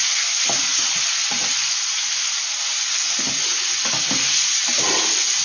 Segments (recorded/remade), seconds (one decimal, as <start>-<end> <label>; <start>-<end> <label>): 0.0-5.4 recorded